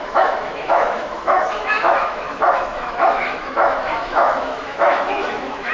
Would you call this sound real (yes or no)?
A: no